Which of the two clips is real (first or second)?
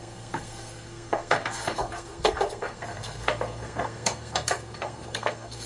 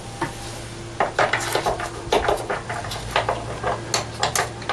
second